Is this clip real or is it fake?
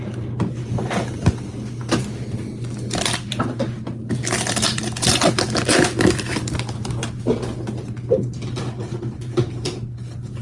real